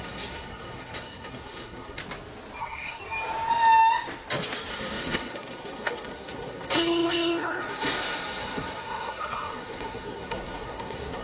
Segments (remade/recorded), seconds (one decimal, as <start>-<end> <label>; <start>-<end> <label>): 0.0-2.0 remade; 2.0-2.6 recorded; 2.6-3.0 remade; 3.0-4.7 recorded; 4.7-11.2 remade